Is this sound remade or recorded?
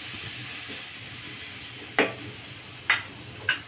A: recorded